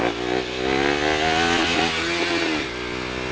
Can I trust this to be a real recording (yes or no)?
yes